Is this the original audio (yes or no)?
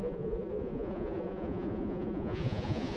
no